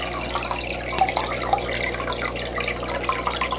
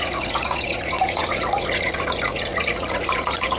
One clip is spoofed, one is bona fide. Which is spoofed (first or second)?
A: second